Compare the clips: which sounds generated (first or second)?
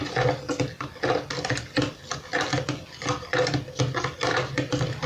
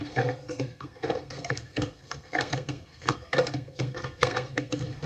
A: second